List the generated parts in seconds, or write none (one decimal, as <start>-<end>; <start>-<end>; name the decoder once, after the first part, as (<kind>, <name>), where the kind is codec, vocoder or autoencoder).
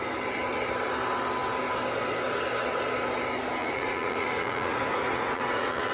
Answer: 3.6-5.9 (vocoder, Vocos)